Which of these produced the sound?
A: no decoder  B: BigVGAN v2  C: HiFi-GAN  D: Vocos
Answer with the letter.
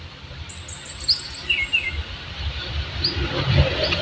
A